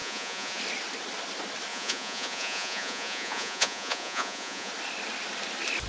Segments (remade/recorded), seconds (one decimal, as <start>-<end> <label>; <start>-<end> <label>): 0.0-0.6 remade; 0.6-1.7 recorded; 1.7-4.7 remade; 4.7-5.9 recorded